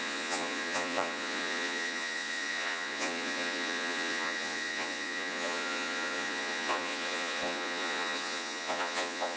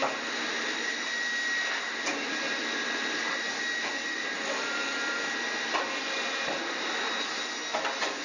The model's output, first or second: first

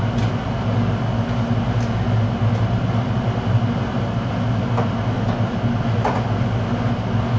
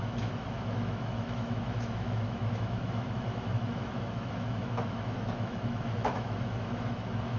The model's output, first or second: second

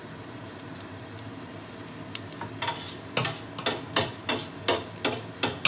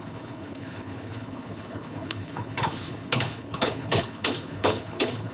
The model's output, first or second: second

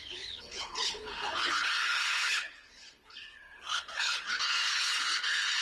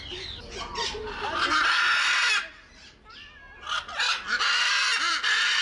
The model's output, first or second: first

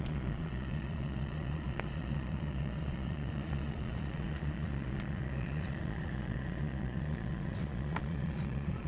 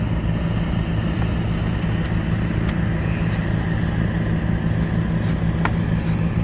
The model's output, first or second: first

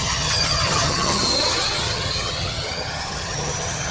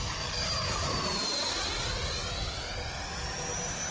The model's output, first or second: first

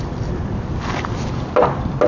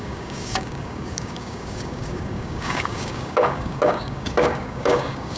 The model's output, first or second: second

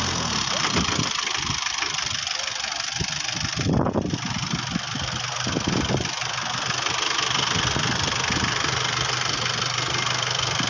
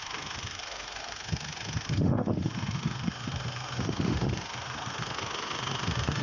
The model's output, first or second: second